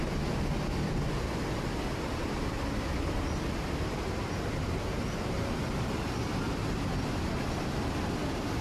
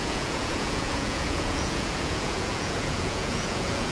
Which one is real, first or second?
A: first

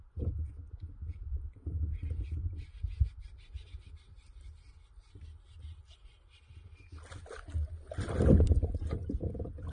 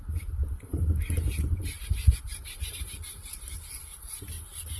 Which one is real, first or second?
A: first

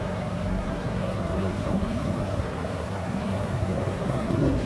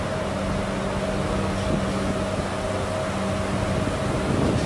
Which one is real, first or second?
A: second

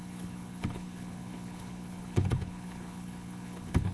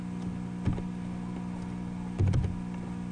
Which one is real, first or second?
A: second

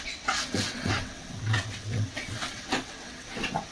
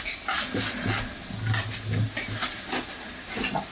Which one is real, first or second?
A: second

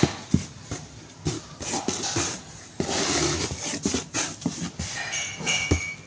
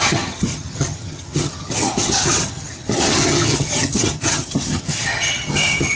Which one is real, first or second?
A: first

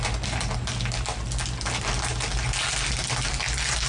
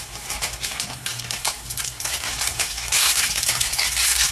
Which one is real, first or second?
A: first